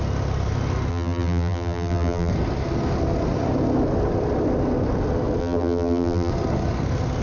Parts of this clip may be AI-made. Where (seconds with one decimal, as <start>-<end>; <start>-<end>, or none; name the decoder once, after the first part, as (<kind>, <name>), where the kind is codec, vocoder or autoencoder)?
0.9-2.3 (vocoder, BigVGAN v2); 5.4-6.3

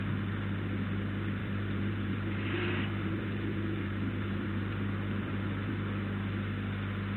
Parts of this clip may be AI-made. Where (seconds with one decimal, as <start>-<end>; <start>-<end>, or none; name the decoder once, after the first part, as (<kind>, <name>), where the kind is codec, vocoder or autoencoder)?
1.4-5.7 (vocoder, BigVGAN v2)

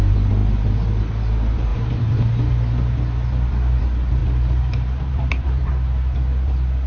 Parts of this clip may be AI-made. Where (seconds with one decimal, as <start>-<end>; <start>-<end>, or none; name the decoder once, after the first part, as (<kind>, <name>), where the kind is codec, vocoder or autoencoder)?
1.7-2.5 (vocoder, BigVGAN v2); 4.2-5.7

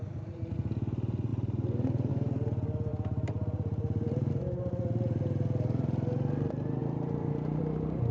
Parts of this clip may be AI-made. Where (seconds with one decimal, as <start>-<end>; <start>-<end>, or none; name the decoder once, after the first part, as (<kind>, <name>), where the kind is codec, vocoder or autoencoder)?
1.3-2.1 (vocoder, BigVGAN v2); 2.9-4.3; 6.8-7.6

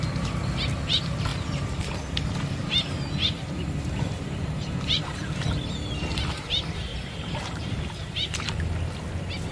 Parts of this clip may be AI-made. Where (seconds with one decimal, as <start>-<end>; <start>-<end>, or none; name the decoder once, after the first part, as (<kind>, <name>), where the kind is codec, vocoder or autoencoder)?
1.3-1.8 (vocoder, BigVGAN v2); 2.6-5.4; 6.9-8.6

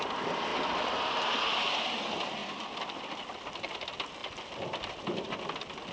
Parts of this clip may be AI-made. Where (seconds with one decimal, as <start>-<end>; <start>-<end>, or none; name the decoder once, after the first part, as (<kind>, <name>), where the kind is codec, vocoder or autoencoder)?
0.5-1.0 (vocoder, BigVGAN v2); 2.4-3.4; 4.2-5.4

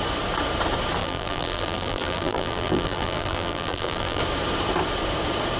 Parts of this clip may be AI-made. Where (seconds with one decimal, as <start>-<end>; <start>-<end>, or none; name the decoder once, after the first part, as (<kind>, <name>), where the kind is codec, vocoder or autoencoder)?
1.0-4.2 (vocoder, BigVGAN v2)